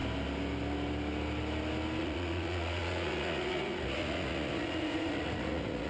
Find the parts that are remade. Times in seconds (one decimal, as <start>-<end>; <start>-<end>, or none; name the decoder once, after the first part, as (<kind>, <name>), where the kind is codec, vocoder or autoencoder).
2.0-5.9 (vocoder, Vocos)